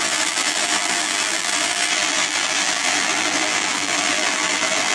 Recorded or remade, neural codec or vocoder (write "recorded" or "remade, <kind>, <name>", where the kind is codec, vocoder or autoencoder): remade, vocoder, BigVGAN v2